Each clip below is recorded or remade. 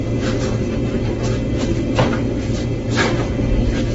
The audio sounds recorded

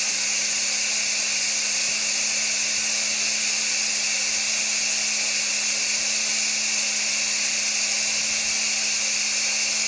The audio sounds recorded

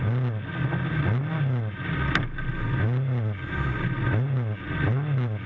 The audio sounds recorded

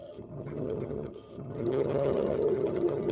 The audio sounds remade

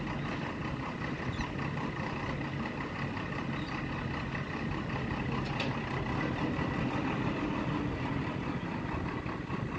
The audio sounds recorded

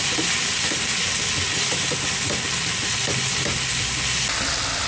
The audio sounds recorded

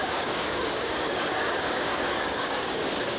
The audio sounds remade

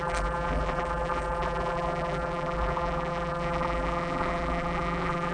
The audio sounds remade